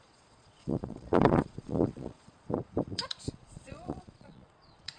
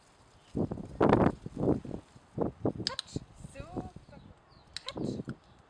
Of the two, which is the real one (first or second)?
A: second